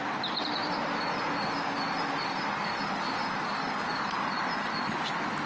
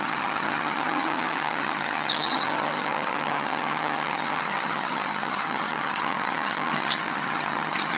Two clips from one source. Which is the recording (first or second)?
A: first